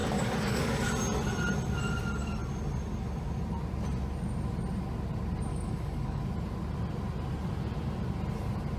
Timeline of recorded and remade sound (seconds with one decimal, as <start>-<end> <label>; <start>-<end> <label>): 0.0-0.9 remade; 0.9-5.5 recorded; 5.5-6.2 remade; 6.2-8.8 recorded